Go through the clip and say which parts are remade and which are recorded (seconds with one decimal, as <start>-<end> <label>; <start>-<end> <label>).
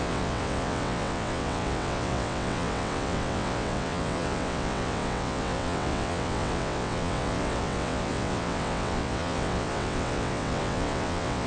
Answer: 0.0-11.5 remade